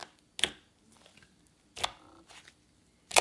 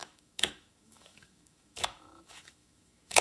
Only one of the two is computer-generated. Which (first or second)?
second